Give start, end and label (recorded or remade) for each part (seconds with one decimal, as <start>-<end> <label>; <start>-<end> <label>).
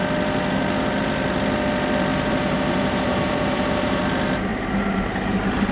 0.0-2.1 recorded; 2.1-4.0 remade; 4.0-4.5 recorded; 4.5-5.7 remade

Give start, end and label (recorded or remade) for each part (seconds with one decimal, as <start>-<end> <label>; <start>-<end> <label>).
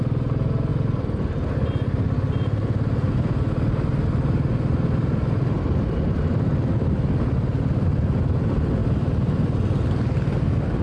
0.0-10.8 recorded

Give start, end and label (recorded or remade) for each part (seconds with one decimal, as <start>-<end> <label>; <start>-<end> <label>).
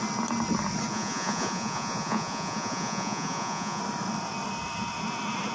0.0-0.9 recorded; 0.9-3.8 remade; 3.8-5.5 recorded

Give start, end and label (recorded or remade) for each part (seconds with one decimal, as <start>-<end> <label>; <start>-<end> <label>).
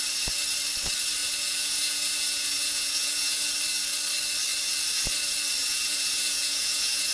0.0-1.2 recorded; 1.2-3.5 remade; 3.5-5.6 recorded; 5.6-7.1 remade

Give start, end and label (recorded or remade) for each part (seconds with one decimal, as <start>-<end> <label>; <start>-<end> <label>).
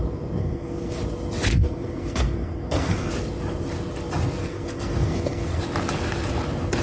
0.0-0.4 recorded; 0.4-1.0 remade; 1.0-1.5 recorded; 1.5-3.1 remade; 3.1-4.4 recorded; 4.4-5.6 remade; 5.6-6.8 recorded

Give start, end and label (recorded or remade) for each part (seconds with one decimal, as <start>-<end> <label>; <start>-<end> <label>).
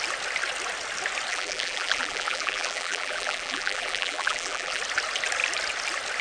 0.0-1.3 recorded; 1.3-4.8 remade; 4.8-6.2 recorded